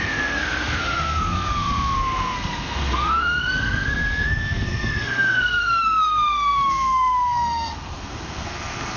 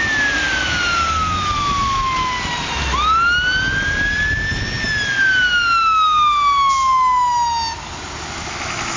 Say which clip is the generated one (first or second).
first